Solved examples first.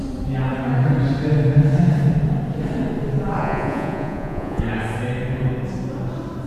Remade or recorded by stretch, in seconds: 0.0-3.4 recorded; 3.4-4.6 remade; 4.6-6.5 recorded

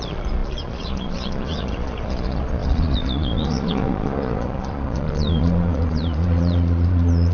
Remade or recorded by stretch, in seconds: 0.0-7.3 remade

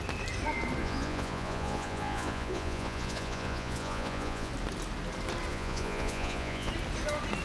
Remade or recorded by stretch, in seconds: 0.0-0.8 recorded; 0.8-4.5 remade; 4.5-5.5 recorded; 5.5-6.7 remade; 6.7-7.4 recorded